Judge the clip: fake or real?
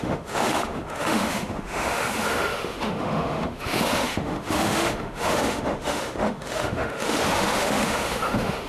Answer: fake